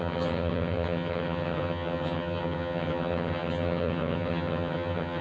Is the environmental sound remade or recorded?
remade